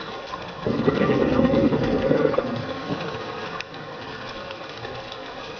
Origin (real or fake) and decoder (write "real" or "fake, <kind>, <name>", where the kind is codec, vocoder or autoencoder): fake, codec, SNAC